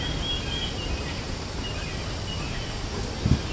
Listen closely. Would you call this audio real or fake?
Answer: real